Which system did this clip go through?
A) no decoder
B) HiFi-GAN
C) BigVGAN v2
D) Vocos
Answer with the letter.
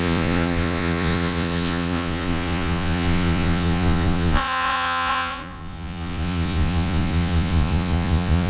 D